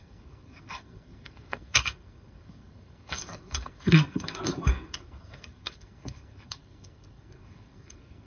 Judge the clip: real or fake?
fake